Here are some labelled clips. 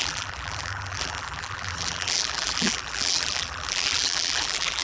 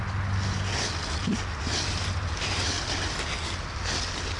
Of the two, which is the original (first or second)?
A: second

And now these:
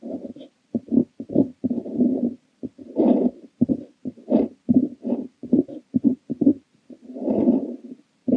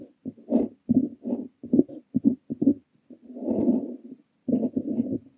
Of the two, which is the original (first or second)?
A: second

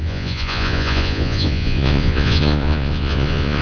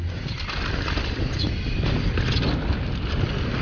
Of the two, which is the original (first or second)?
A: second